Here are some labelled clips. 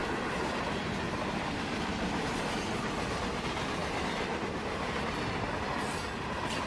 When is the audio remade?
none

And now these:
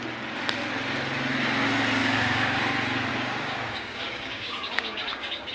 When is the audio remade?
2.0-2.6 (codec, DAC); 3.1-5.5

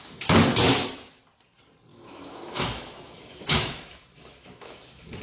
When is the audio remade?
0.5-1.2 (autoencoder, DAC-VAE); 1.9-5.2

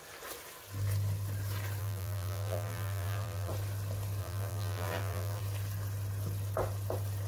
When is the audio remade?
1.8-3.5 (vocoder, BigVGAN v2); 4.2-5.4

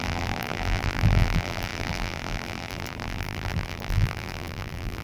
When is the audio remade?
0.0-5.0 (vocoder, BigVGAN v2)

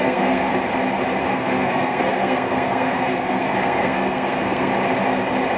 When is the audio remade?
0.0-0.5 (codec, SNAC); 1.2-4.7